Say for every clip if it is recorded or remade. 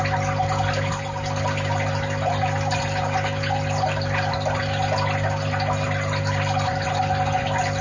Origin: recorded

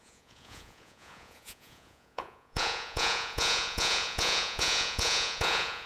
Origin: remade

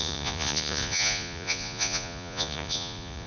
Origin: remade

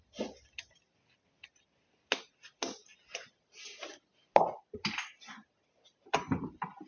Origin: recorded